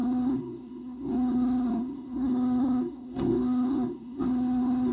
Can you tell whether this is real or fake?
fake